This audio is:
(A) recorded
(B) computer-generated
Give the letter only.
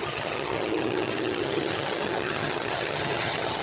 B